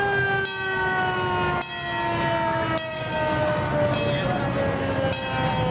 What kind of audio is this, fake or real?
real